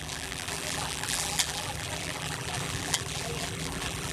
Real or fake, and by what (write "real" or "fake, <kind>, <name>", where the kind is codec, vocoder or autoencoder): fake, vocoder, BigVGAN v2